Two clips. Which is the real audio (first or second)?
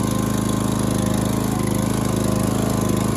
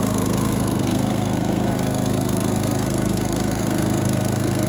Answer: first